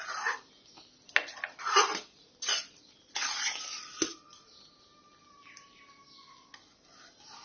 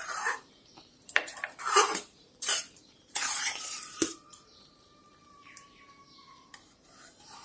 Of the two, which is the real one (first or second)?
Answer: first